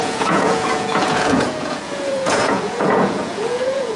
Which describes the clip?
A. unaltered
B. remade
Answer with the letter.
B